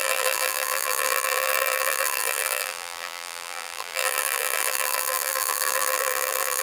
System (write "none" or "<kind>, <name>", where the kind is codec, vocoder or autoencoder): vocoder, BigVGAN v2